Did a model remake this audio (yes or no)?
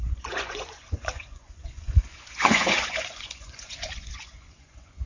yes